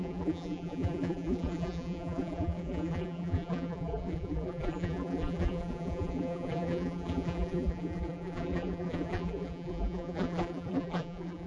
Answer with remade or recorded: remade